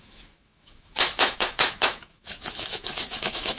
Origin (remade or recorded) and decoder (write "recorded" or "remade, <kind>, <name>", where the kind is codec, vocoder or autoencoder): remade, autoencoder, DAC-VAE